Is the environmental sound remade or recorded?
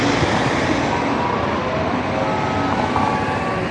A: recorded